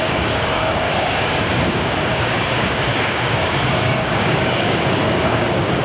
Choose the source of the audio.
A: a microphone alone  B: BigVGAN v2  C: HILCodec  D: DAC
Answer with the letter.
D